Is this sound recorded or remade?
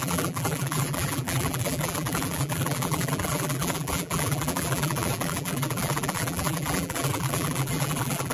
remade